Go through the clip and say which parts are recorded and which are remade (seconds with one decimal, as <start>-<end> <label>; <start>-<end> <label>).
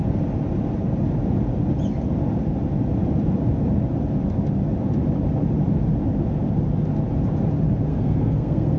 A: 0.0-7.9 recorded; 7.9-8.8 remade